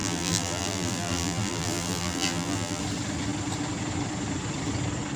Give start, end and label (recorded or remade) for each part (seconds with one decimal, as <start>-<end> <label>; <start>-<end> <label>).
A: 0.0-2.8 remade; 2.8-5.2 recorded